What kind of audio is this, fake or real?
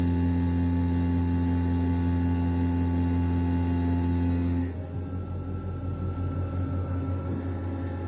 real